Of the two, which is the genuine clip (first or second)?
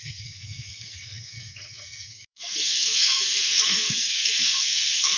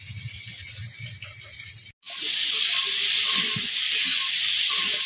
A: second